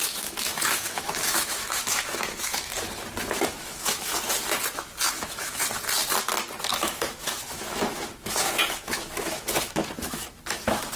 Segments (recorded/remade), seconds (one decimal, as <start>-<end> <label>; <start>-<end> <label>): 0.0-2.7 remade; 2.7-3.3 recorded; 3.3-4.1 remade; 4.1-5.0 recorded; 5.0-5.6 remade; 5.6-6.7 recorded; 6.7-11.0 remade